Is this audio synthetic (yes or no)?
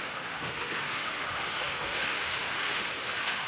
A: yes